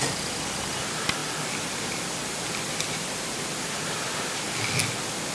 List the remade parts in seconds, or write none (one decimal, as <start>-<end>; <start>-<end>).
none